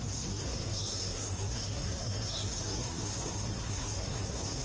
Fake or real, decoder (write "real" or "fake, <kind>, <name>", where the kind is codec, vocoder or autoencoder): fake, codec, SNAC